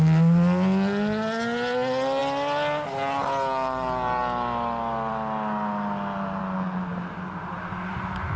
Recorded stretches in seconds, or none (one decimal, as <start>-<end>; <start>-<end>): 0.0-8.4